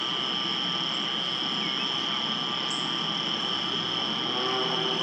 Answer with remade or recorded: recorded